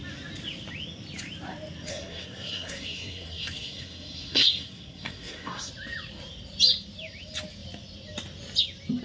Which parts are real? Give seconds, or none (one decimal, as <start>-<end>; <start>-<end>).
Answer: 0.0-1.9; 5.7-9.0